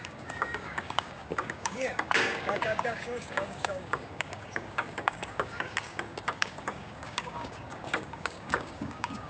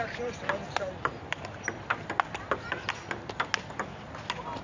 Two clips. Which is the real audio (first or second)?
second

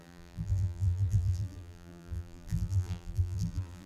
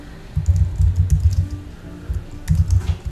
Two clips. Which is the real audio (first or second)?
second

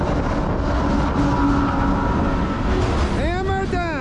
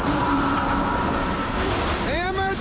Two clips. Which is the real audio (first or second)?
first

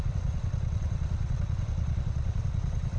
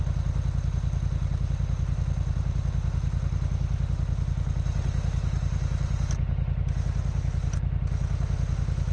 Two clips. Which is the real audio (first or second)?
second